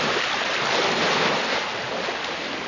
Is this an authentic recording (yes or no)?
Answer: yes